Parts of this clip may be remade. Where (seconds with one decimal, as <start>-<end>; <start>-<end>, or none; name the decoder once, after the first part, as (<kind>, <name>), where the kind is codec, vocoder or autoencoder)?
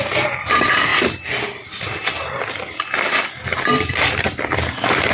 0.0-5.1 (vocoder, BigVGAN v2)